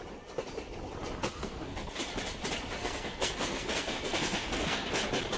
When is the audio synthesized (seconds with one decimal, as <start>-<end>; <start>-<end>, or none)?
1.2-2.0; 2.8-4.9